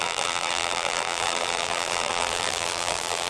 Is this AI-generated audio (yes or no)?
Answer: yes